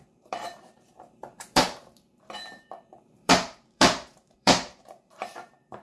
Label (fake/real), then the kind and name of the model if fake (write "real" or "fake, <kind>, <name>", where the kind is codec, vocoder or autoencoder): fake, vocoder, BigVGAN v2